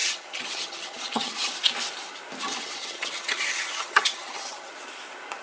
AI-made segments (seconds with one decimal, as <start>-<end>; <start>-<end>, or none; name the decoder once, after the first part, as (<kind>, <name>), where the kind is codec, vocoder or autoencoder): 0.0-1.5 (vocoder, HiFi-GAN); 2.4-4.7